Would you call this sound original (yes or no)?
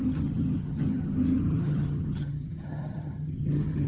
no